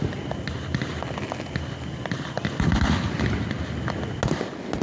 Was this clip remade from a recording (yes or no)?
no